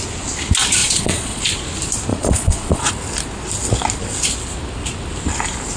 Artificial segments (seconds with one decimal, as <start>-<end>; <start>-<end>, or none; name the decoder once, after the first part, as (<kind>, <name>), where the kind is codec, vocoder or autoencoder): 0.8-1.4 (vocoder, Vocos); 2.1-2.9